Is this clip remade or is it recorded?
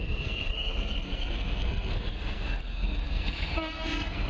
remade